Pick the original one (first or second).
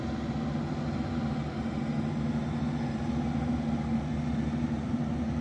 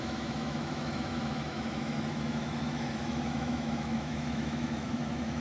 first